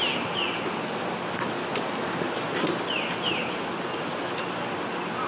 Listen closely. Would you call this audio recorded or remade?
recorded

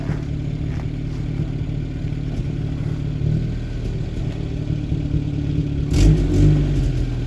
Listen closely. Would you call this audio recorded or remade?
recorded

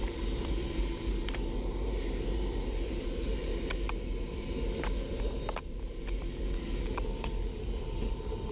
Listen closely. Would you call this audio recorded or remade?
remade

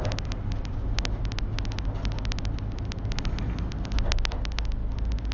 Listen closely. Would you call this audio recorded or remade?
recorded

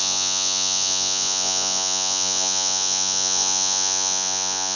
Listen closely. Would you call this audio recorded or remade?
remade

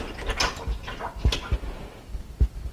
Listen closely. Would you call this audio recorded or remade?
recorded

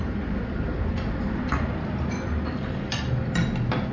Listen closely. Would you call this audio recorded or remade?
recorded